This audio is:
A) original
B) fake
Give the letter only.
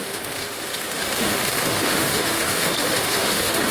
B